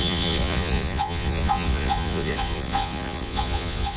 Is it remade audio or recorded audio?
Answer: remade